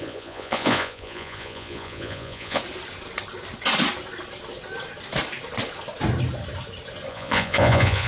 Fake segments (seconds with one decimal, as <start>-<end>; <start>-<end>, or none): 0.0-2.6; 7.1-8.1